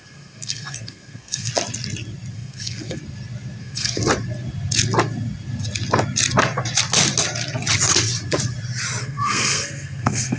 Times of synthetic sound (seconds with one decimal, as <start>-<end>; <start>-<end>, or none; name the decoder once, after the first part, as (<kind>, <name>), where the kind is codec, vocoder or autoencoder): 0.0-1.5 (codec, SNAC); 2.3-3.0; 3.6-4.0; 9.0-10.4